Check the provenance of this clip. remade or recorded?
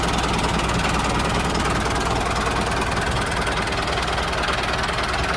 recorded